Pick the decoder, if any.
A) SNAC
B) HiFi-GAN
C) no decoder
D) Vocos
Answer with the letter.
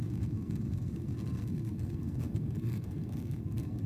A